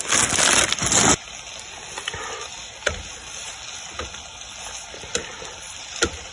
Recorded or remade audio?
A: recorded